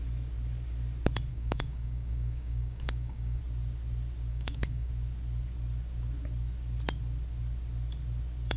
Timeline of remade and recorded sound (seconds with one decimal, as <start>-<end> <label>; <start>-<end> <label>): 0.0-1.3 recorded; 1.3-3.4 remade; 3.4-4.3 recorded; 4.3-4.9 remade; 4.9-8.6 recorded